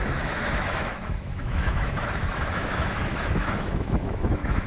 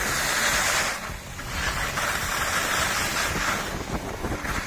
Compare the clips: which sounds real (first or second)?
second